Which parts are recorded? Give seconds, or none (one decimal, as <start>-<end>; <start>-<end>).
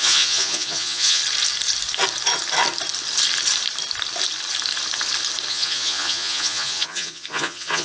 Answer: 1.2-5.5